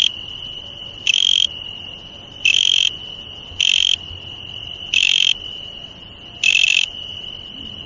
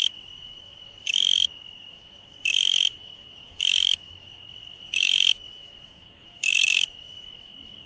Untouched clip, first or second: first